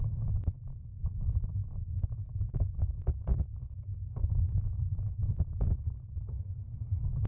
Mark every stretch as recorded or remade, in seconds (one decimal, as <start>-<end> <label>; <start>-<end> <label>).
0.0-1.6 recorded; 1.6-5.3 remade; 5.3-7.3 recorded

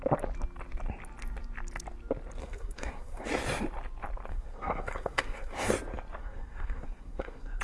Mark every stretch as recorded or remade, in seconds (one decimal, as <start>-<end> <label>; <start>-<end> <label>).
0.0-2.4 recorded; 2.4-3.3 remade; 3.3-4.3 recorded; 4.3-5.7 remade; 5.7-6.2 recorded; 6.2-7.6 remade